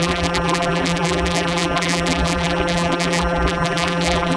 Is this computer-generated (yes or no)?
yes